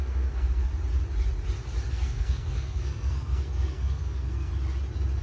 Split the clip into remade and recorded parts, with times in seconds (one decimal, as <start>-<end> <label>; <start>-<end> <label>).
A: 0.0-0.7 remade; 0.7-1.9 recorded; 1.9-4.5 remade; 4.5-5.2 recorded